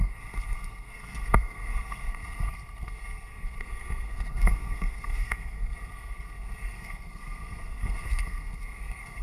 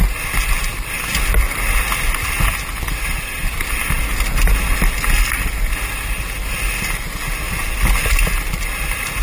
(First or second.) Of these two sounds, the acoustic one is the second